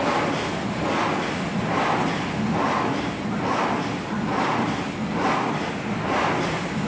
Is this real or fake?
real